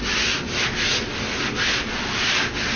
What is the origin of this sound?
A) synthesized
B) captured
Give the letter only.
B